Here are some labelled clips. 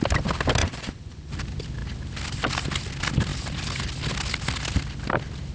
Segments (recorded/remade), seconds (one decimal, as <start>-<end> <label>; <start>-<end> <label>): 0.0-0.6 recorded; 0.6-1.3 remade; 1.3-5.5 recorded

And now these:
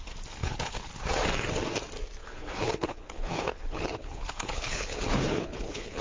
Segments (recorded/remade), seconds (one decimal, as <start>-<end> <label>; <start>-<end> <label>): 0.0-0.4 recorded; 0.4-0.9 remade; 0.9-2.2 recorded; 2.2-6.0 remade

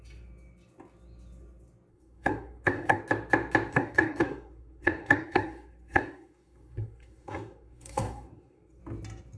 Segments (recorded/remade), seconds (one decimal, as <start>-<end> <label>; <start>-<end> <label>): 0.0-1.9 recorded; 1.9-3.0 remade; 3.0-3.7 recorded; 3.7-8.8 remade; 8.8-9.4 recorded